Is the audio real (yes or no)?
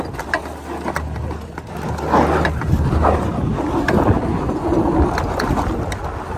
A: yes